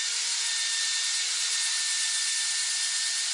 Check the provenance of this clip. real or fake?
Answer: real